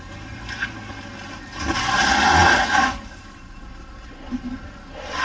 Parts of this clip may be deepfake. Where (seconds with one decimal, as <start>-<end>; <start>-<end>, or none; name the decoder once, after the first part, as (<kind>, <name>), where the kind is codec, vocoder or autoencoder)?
none